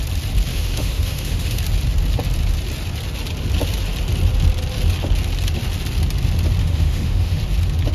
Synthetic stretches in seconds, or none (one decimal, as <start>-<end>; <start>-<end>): 0.5-1.6; 6.6-7.4